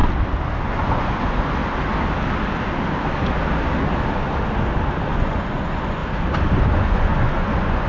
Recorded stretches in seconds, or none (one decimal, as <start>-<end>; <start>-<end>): 0.0-0.7; 1.6-5.1; 6.0-6.7

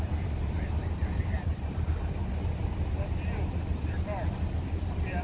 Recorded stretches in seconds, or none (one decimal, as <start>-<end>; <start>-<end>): 1.0-1.6; 2.2-3.8

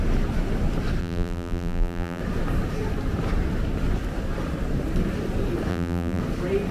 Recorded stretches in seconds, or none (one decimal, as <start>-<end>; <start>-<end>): 0.0-1.0; 2.2-5.7; 6.2-6.7

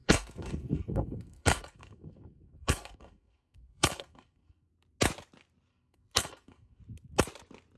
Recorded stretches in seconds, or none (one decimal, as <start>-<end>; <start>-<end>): 4.7-5.7; 6.8-7.8

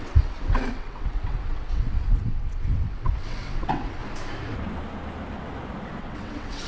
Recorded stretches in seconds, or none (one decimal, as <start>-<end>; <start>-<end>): 4.0-6.0

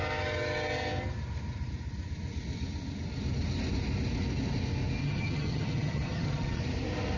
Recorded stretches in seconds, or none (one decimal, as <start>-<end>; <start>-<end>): 0.0-5.0; 6.6-7.2